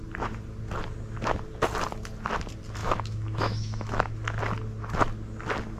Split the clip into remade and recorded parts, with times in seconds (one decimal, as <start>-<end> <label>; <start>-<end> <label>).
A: 0.0-2.8 recorded; 2.8-4.1 remade; 4.1-5.8 recorded